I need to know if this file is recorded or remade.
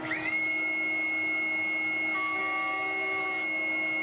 recorded